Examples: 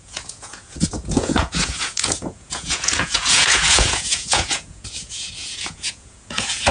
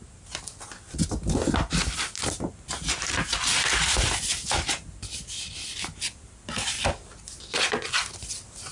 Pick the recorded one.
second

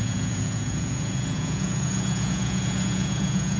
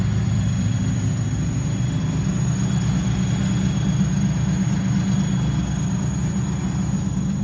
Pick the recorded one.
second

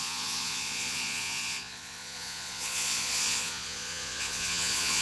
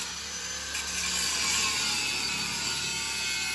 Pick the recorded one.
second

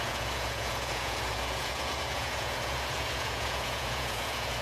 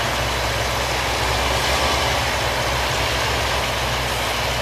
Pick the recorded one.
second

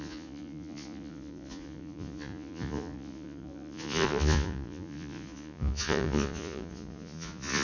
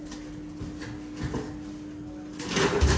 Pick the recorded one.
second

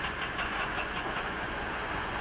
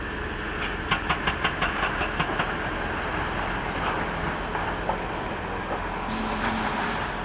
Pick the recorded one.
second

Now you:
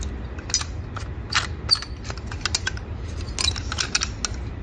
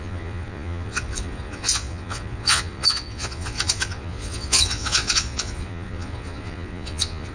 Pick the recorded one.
first